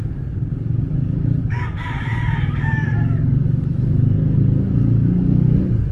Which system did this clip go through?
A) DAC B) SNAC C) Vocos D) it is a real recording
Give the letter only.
A